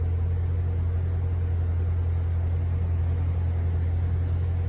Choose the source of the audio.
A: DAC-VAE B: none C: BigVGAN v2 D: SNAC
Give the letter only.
B